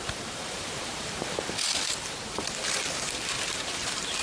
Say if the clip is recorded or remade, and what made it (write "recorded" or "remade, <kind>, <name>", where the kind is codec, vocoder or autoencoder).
remade, vocoder, BigVGAN v2